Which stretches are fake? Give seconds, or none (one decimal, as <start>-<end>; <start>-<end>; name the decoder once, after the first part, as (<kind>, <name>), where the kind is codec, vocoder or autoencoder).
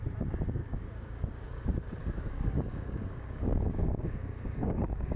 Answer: 0.6-1.5 (codec, DAC); 2.0-5.2